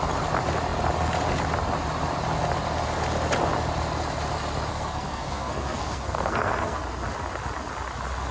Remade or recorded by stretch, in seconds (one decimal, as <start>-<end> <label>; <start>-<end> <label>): 0.0-4.7 recorded; 4.7-6.8 remade; 6.8-8.3 recorded